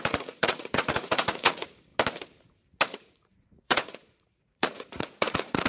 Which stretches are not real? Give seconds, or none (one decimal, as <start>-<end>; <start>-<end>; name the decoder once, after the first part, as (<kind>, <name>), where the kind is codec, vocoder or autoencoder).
0.0-1.9 (vocoder, Vocos); 2.9-5.7